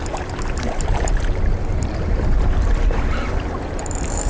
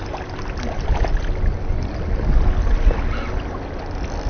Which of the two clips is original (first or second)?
second